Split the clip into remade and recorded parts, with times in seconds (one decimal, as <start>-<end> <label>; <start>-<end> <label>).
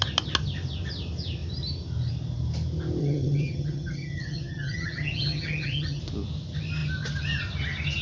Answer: 0.0-3.0 recorded; 3.0-6.0 remade; 6.0-8.0 recorded